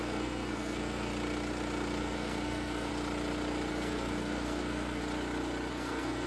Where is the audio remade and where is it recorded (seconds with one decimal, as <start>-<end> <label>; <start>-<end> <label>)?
0.0-1.1 remade; 1.1-2.0 recorded; 2.0-2.9 remade; 2.9-3.7 recorded; 3.7-5.0 remade; 5.0-5.7 recorded; 5.7-6.3 remade